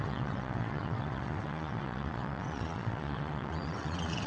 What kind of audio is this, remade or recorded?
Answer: remade